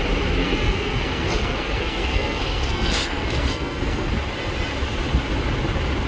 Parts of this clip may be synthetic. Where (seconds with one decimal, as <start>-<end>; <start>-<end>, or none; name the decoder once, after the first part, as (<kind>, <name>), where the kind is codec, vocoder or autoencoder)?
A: 0.4-4.1 (codec, SNAC)